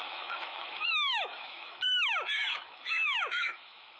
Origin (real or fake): fake